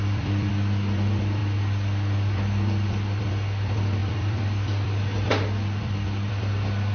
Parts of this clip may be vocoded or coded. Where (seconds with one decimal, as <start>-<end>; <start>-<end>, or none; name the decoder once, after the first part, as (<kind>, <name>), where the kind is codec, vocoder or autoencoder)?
0.0-0.5 (vocoder, BigVGAN v2); 4.0-6.3